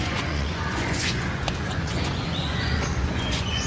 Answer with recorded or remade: remade